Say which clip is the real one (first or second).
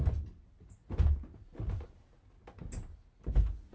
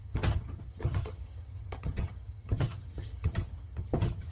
first